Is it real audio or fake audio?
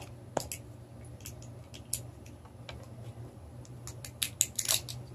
real